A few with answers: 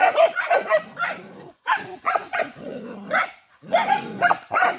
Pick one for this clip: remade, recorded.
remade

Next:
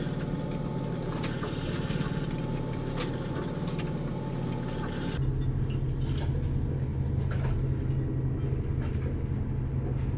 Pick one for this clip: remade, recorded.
recorded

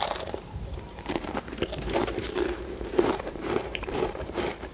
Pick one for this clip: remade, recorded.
remade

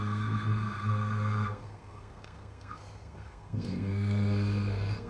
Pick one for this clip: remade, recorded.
remade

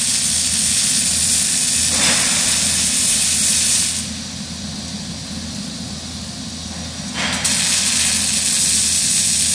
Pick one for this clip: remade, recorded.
recorded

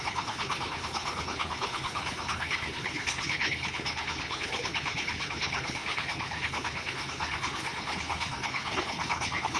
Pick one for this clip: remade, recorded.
remade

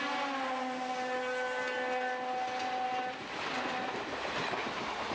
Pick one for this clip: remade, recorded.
recorded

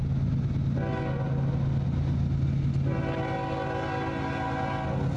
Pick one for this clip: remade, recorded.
recorded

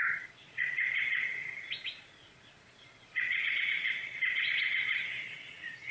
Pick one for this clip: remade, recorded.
remade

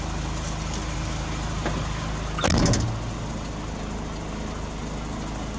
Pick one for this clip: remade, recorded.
recorded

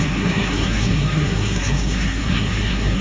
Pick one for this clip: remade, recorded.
remade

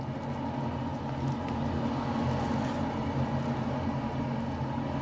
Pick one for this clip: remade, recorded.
recorded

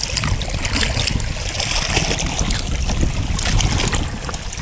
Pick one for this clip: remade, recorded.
recorded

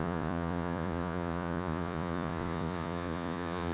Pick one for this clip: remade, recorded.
remade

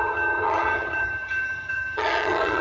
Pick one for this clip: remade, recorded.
remade